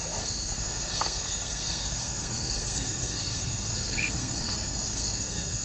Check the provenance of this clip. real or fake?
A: fake